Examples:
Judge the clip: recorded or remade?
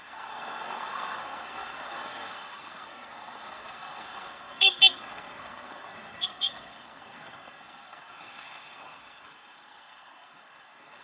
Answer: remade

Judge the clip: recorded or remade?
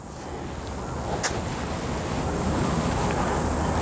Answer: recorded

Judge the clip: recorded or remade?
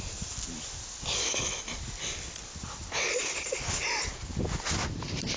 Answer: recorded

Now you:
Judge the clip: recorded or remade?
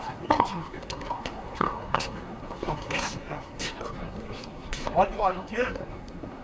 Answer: remade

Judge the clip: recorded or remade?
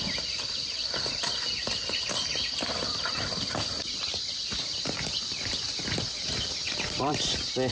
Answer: remade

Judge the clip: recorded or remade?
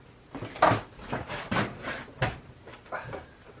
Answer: recorded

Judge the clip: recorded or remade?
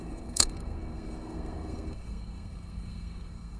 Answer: remade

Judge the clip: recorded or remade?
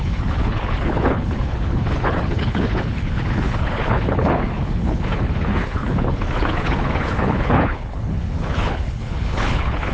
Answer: remade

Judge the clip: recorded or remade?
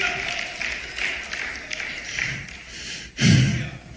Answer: recorded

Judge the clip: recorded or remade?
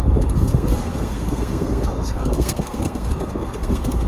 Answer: remade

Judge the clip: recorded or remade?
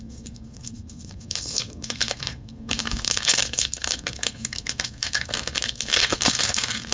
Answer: remade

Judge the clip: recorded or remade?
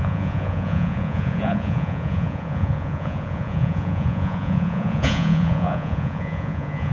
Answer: remade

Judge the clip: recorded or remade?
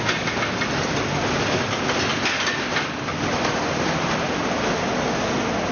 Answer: recorded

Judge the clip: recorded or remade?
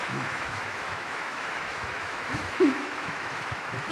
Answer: remade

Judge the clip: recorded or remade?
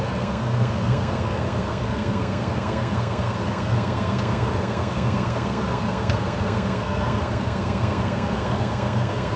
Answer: remade